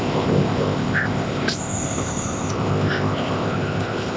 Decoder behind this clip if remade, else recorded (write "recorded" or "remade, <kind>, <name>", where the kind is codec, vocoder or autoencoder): remade, codec, ZipCodec